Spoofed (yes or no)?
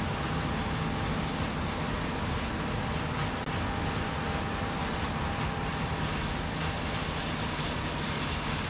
no